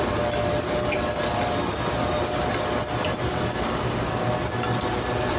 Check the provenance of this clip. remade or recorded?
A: recorded